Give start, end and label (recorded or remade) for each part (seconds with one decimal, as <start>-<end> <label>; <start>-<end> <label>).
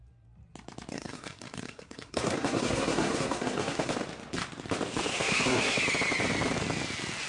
0.0-0.9 recorded; 0.9-3.9 remade; 3.9-5.1 recorded; 5.1-5.8 remade; 5.8-7.3 recorded